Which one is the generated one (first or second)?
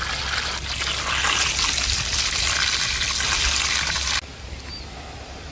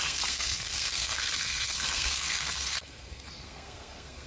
second